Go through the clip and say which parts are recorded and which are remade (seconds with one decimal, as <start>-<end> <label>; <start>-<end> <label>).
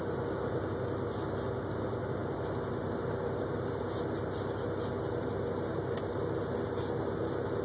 0.0-7.6 recorded